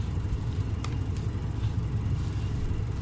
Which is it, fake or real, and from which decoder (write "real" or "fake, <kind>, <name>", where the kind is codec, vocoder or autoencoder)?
real